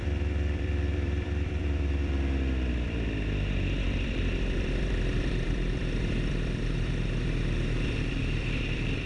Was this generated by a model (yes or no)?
yes